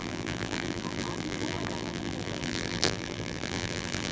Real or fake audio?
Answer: fake